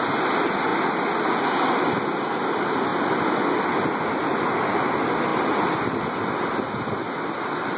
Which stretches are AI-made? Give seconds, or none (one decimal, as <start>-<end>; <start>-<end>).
none